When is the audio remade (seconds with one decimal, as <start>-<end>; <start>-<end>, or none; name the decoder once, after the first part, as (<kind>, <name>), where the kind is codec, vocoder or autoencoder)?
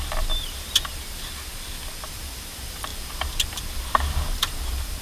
0.0-1.5 (vocoder, BigVGAN v2); 2.0-5.0